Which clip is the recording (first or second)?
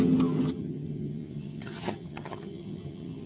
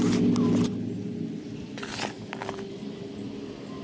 second